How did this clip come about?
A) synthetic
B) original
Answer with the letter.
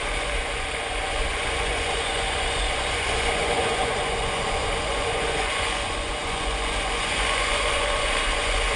A